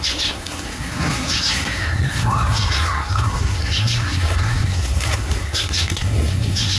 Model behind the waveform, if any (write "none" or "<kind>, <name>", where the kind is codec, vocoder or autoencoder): codec, SNAC